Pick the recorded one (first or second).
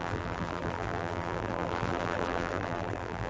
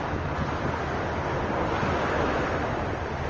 second